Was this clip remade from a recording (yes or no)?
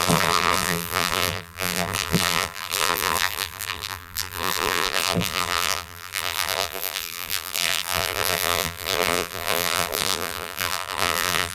yes